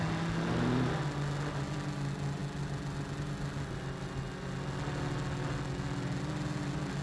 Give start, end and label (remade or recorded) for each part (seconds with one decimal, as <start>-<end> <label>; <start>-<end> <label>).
0.0-7.0 recorded